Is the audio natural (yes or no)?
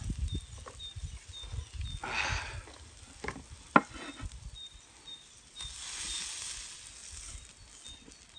yes